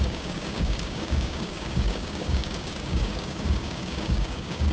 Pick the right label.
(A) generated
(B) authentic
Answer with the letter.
A